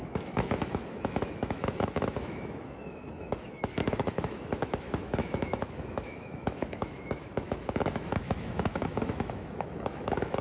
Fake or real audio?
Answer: fake